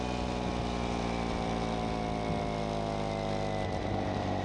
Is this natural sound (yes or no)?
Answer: yes